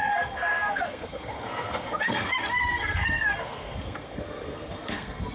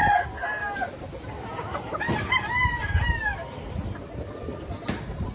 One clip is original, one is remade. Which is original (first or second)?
second